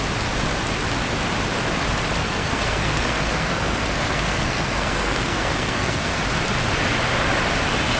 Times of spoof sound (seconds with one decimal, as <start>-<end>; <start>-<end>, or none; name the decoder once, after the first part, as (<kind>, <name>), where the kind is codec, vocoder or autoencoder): 2.2-6.2 (codec, SNAC)